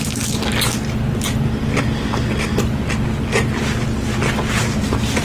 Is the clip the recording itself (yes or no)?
yes